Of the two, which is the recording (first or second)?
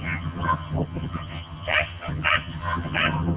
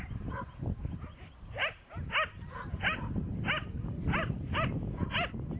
second